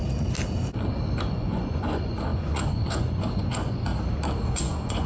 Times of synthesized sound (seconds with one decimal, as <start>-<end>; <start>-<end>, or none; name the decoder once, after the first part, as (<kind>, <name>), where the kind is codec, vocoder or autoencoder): 1.3-3.9 (vocoder, Vocos); 4.5-5.1